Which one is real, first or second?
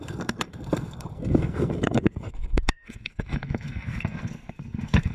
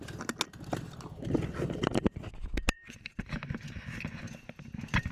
second